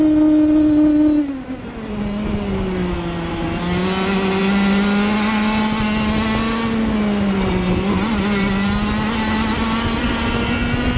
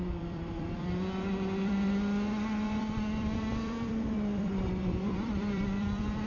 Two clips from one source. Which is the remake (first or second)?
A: second